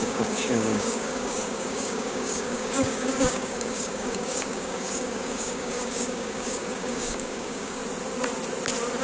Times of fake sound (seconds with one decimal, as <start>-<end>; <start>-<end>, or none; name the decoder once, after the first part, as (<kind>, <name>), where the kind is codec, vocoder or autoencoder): 0.0-7.8 (codec, DAC)

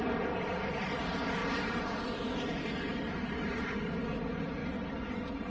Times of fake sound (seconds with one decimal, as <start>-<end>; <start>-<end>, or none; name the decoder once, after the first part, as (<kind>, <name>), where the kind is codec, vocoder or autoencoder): none

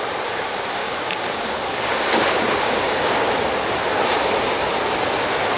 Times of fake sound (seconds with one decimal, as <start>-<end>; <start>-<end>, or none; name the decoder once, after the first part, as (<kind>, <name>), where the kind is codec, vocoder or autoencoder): 0.8-3.3 (codec, DAC)

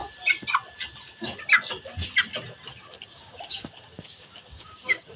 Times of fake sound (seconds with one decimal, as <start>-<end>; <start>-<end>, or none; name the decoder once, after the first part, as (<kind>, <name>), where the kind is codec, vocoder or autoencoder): 3.1-5.2 (codec, DAC)

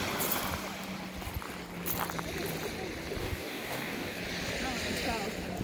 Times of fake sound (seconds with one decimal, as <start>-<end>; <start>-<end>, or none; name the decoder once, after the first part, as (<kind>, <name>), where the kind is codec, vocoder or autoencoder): 3.2-4.2 (codec, DAC)

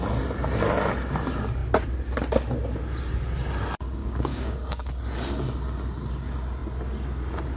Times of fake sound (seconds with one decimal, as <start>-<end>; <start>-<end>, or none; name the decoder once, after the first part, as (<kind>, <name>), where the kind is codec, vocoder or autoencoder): 4.0-4.9 (codec, DAC)